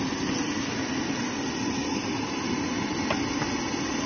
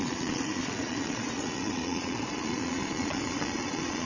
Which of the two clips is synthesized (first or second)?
second